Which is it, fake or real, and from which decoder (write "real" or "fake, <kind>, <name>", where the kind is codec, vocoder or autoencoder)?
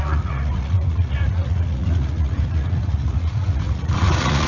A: fake, vocoder, Vocos